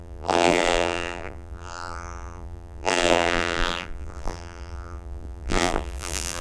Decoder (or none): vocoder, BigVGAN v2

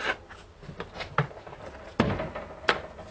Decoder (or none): vocoder, BigVGAN v2